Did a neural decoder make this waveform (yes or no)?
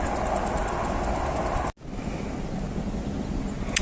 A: no